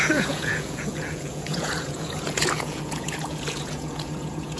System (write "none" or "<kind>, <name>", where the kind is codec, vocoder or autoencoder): vocoder, Vocos